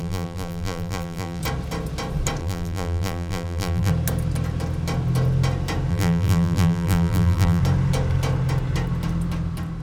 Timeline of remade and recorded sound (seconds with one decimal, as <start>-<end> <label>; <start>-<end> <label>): 0.0-1.4 remade; 1.4-2.4 recorded; 2.4-3.9 remade; 3.9-5.9 recorded; 5.9-7.6 remade; 7.6-9.8 recorded